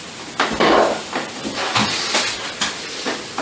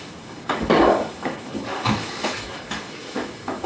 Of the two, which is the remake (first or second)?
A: second